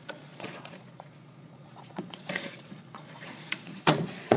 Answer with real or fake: fake